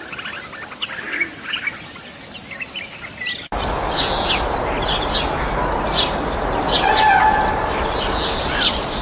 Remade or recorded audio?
recorded